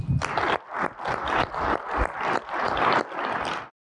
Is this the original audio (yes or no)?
yes